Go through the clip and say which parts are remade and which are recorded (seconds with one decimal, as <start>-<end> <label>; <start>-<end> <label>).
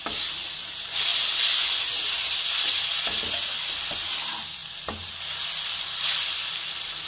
0.0-7.1 recorded